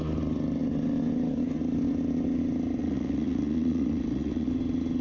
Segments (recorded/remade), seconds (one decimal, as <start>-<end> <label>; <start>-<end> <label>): 0.0-2.8 recorded; 2.8-4.5 remade; 4.5-5.0 recorded